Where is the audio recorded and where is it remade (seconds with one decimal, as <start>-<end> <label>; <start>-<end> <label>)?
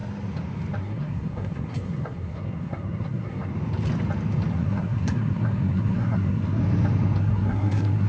0.0-0.8 recorded; 0.8-3.5 remade; 3.5-4.5 recorded; 4.5-6.6 remade; 6.6-7.2 recorded; 7.2-8.1 remade